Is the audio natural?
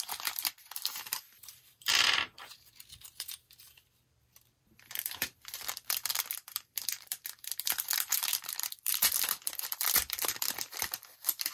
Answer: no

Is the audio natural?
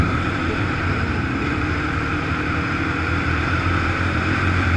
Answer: no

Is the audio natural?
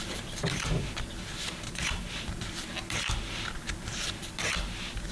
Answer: no